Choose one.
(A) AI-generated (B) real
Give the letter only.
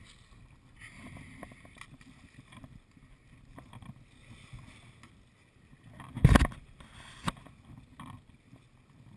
B